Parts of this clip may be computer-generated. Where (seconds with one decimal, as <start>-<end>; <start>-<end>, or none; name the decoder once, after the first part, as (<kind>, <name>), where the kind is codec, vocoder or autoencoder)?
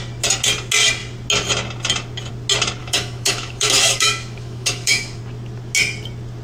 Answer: 2.8-5.2 (autoencoder, DAC-VAE)